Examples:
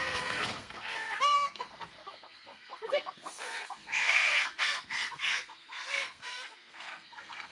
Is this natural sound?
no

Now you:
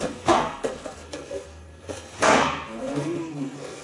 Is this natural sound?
no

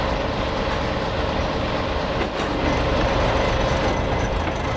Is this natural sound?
yes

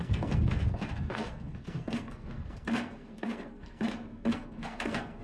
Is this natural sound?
no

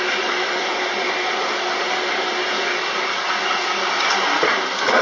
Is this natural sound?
yes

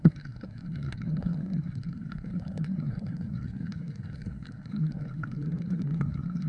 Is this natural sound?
no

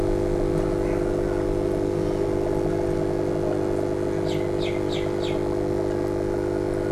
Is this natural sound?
yes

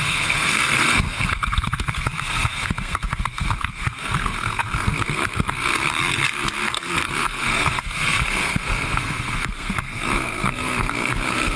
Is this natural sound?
no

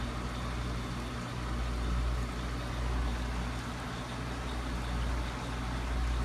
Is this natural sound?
yes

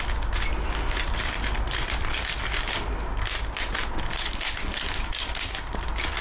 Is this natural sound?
yes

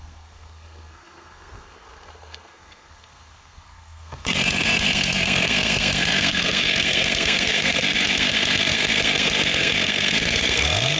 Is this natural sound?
no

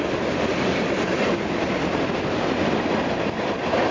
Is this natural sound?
yes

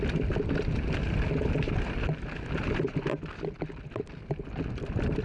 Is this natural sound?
yes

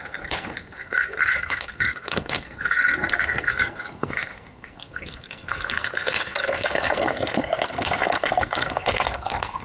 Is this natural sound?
no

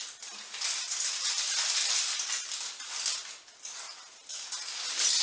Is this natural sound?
yes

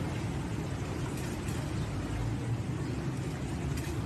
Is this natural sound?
yes